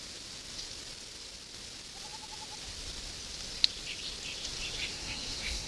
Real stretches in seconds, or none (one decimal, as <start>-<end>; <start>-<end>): 0.0-4.9

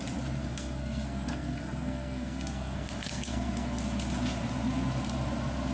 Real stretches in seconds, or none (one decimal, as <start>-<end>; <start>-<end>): 0.0-0.4; 3.8-5.7

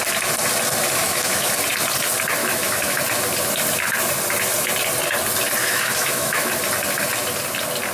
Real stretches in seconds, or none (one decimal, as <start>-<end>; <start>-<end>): 0.0-1.0; 1.5-2.4; 3.0-5.6; 6.5-7.9

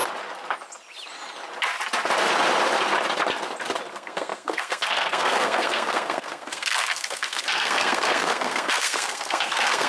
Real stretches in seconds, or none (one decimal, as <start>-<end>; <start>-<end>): 0.0-3.9

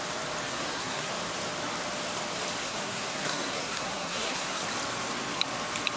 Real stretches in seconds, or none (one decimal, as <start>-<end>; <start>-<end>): 0.0-0.5; 1.1-2.6; 4.6-6.0